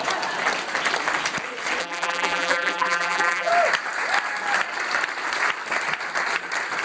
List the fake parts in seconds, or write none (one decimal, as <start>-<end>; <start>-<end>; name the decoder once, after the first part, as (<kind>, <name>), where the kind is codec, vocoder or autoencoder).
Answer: 1.8-3.5 (vocoder, BigVGAN v2)